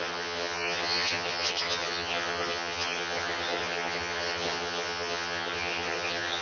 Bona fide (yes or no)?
no